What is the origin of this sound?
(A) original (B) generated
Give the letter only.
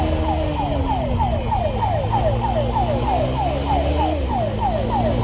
A